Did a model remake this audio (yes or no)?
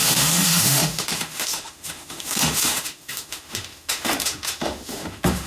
yes